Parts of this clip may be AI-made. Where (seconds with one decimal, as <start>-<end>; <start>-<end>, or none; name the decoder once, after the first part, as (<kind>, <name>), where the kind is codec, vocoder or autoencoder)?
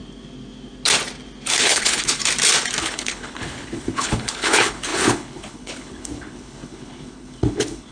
1.5-2.2 (codec, HILCodec); 2.8-7.9